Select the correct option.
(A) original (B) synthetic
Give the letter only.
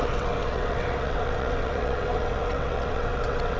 B